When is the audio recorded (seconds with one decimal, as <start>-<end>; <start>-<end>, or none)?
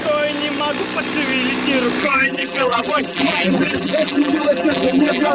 0.0-2.0